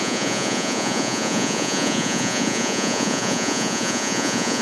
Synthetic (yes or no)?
yes